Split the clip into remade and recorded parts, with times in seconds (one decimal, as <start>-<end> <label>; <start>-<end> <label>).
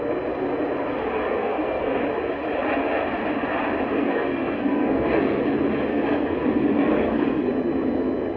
0.0-1.4 recorded; 1.4-2.0 remade; 2.0-3.9 recorded; 3.9-5.4 remade; 5.4-5.9 recorded; 5.9-7.5 remade; 7.5-8.4 recorded